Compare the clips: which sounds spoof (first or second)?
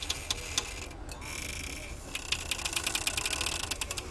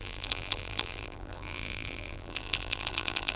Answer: second